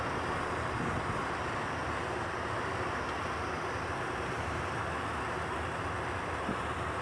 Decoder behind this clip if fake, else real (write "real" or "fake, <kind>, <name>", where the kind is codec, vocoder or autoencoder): real